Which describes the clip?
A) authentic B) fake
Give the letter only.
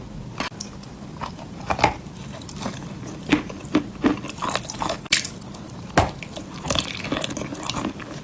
A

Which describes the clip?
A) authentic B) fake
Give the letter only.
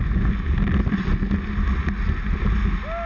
A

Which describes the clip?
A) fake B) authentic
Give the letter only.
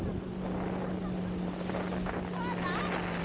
B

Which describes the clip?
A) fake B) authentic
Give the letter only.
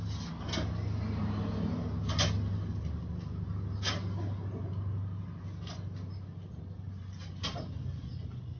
B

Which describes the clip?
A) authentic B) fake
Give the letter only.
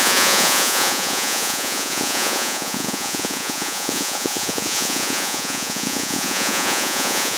B